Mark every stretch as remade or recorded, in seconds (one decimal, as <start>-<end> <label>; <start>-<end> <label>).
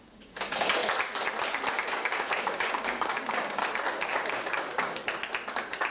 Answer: 0.0-0.8 remade; 0.8-1.7 recorded; 1.7-3.6 remade; 3.6-4.3 recorded; 4.3-5.0 remade; 5.0-5.5 recorded; 5.5-5.9 remade